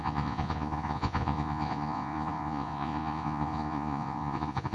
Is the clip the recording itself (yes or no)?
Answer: no